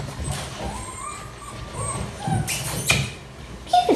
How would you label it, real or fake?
real